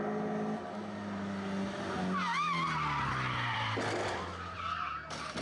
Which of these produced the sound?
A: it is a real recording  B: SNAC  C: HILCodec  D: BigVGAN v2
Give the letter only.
A